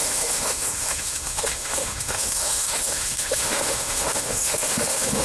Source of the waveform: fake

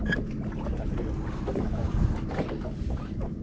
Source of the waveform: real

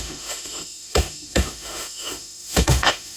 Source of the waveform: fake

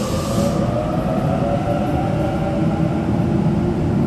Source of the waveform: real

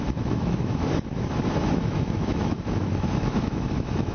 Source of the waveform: fake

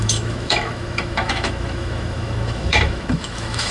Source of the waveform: fake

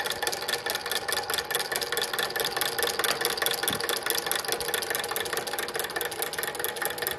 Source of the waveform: real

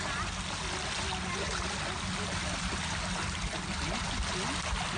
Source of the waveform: real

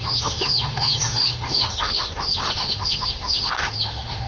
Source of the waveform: fake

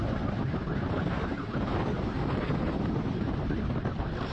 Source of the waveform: real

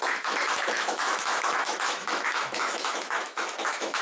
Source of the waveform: fake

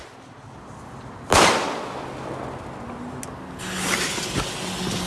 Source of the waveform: real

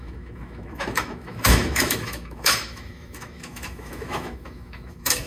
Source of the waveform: fake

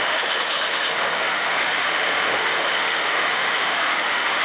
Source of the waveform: fake